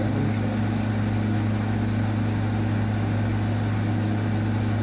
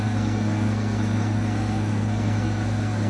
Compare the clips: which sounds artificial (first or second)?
second